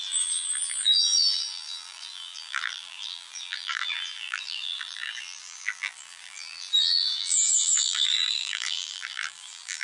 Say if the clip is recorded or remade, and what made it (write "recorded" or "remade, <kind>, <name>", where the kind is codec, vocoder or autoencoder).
remade, vocoder, BigVGAN v2